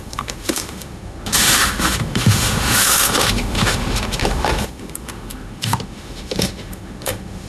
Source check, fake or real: fake